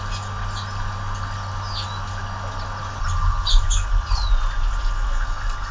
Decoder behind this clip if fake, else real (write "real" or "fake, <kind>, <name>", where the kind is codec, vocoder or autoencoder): real